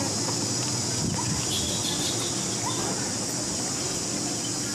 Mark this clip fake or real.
real